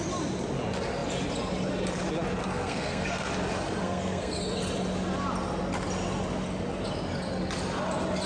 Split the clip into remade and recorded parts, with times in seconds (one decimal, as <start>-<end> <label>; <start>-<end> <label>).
0.0-2.4 recorded; 2.4-3.3 remade; 3.3-3.8 recorded; 3.8-4.4 remade; 4.4-8.3 recorded